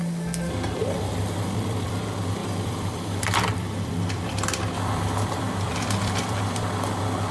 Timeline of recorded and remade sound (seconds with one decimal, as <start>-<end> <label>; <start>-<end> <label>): 0.0-0.8 recorded; 0.8-2.0 remade; 2.0-2.4 recorded; 2.4-6.4 remade; 6.4-7.3 recorded